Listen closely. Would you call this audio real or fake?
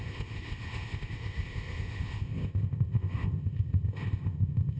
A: fake